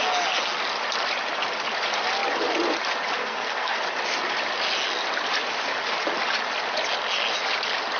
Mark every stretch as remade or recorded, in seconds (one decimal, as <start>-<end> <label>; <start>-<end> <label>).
0.0-3.2 recorded; 3.2-3.8 remade; 3.8-8.0 recorded